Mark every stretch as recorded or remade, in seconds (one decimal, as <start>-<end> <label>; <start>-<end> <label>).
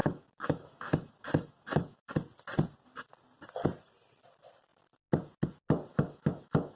0.0-2.1 remade; 2.1-5.9 recorded; 5.9-6.8 remade